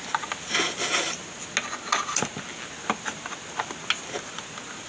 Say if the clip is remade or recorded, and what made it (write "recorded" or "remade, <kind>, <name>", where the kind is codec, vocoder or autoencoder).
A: recorded